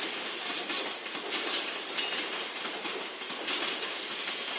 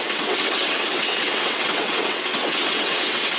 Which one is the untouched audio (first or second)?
first